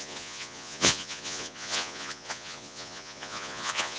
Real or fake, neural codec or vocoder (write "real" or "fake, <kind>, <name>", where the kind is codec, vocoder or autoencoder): fake, vocoder, Vocos